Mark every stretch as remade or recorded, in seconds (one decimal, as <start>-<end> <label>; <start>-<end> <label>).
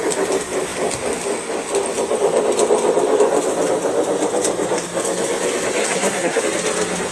0.0-5.8 recorded; 5.8-6.4 remade; 6.4-7.1 recorded